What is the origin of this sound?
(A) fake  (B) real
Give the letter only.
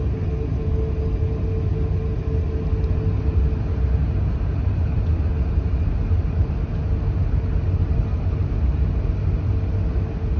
B